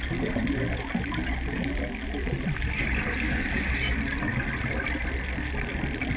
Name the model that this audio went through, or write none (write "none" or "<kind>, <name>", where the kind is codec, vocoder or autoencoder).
none